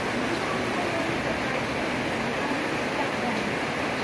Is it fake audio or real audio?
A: real